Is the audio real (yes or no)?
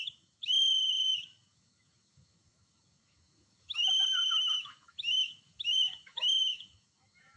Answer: no